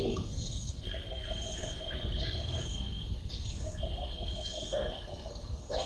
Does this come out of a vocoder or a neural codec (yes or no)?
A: yes